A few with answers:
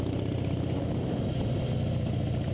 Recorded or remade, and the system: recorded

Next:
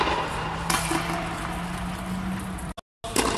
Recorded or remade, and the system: recorded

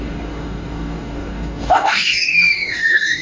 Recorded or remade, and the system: remade, codec, DAC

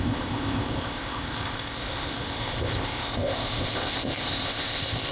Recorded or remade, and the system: remade, codec, ZipCodec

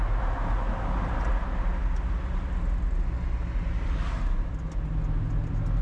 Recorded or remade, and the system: recorded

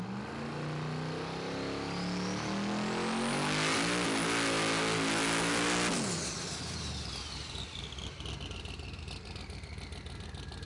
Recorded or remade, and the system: recorded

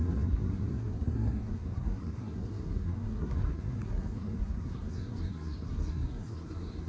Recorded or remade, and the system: remade, codec, SNAC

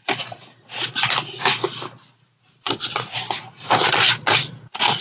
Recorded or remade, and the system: recorded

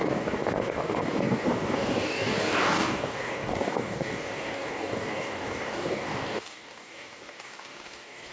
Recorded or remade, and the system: remade, codec, DAC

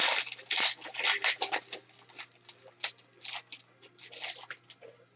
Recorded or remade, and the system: recorded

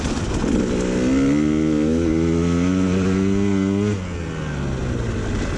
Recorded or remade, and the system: recorded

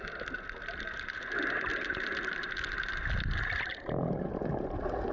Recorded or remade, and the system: recorded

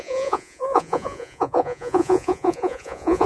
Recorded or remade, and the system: remade, vocoder, Vocos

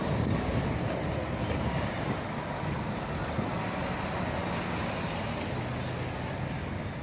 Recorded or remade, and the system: recorded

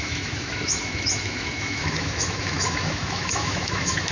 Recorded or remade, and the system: remade, autoencoder, DAC-VAE